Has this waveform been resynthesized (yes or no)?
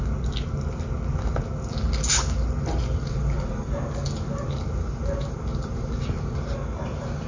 no